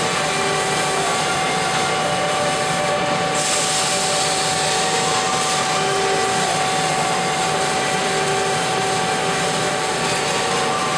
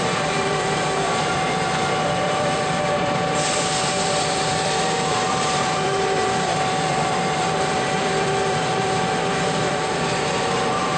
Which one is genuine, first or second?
first